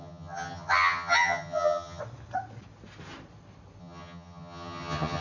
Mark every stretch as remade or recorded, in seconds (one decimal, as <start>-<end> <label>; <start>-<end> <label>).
0.0-2.0 remade; 2.0-3.8 recorded; 3.8-5.2 remade